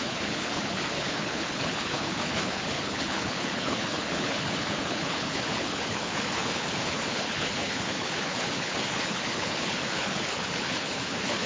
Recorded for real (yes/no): no